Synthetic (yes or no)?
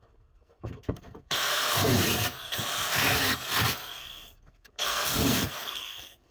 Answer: yes